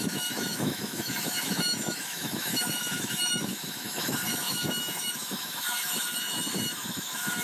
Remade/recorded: remade